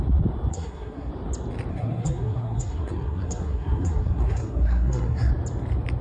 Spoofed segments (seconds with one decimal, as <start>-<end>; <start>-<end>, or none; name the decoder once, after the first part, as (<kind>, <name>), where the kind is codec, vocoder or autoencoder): 0.5-1.1 (codec, SNAC); 1.7-5.3